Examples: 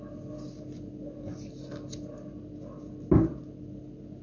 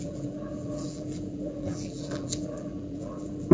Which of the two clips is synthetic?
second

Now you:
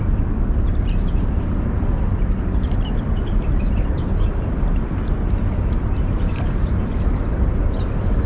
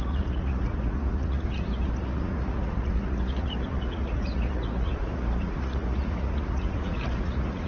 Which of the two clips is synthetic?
second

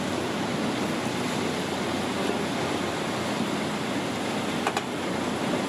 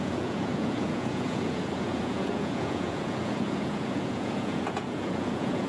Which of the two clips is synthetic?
second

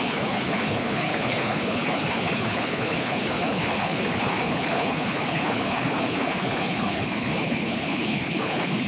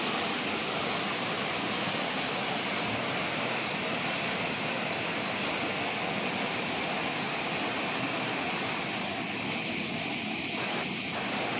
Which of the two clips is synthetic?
first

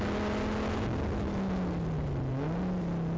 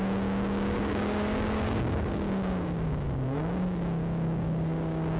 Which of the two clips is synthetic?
second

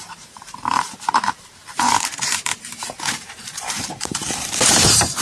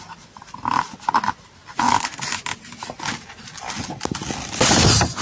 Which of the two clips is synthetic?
first